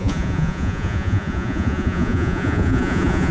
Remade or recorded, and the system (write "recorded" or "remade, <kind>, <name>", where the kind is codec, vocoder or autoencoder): remade, vocoder, Vocos